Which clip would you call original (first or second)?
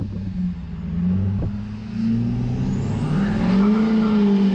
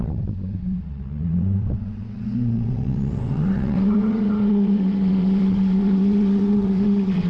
first